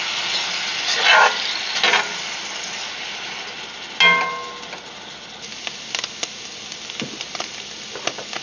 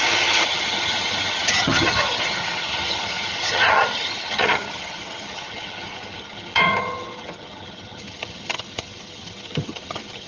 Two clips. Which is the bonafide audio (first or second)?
first